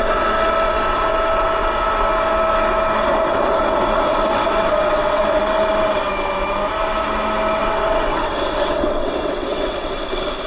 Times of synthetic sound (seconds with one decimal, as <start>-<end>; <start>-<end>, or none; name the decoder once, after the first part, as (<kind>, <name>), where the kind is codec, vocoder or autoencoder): 4.3-5.4 (vocoder, WaveNeXt); 7.6-9.9